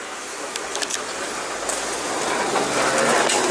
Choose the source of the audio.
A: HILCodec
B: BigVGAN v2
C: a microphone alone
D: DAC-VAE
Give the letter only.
C